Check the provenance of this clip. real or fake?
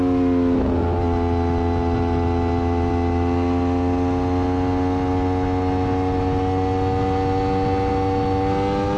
real